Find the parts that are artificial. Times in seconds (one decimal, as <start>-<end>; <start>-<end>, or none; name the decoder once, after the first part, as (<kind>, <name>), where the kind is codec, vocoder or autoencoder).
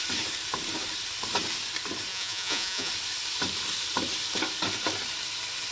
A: 2.1-2.9 (vocoder, Vocos)